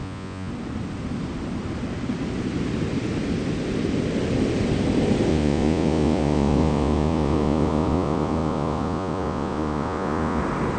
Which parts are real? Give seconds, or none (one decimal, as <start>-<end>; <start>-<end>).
0.5-5.3; 10.4-10.8